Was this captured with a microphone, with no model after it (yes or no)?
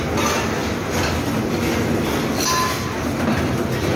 yes